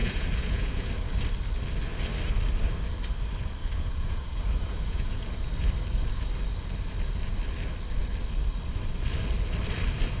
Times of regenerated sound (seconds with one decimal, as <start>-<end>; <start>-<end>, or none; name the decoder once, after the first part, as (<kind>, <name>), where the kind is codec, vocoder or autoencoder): 0.0-0.9 (vocoder, Vocos); 3.6-5.5